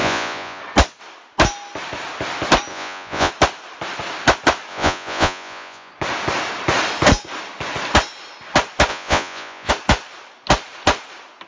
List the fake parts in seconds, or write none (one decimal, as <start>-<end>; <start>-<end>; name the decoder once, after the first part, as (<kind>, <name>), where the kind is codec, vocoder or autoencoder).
0.0-0.6 (vocoder, Vocos); 2.7-3.3; 4.7-5.9; 8.9-9.7